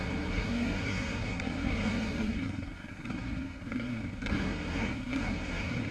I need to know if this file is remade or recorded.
remade